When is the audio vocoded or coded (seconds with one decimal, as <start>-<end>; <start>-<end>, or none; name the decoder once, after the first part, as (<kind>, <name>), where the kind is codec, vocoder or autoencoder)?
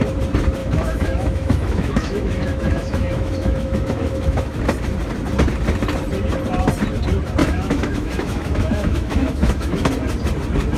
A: 0.6-4.6 (autoencoder, DAC-VAE); 7.4-9.9